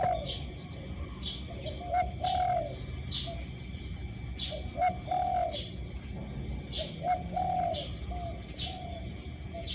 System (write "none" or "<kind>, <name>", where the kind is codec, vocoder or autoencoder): none